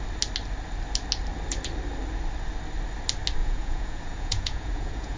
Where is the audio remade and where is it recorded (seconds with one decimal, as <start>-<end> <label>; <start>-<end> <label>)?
0.0-3.4 recorded; 3.4-5.2 remade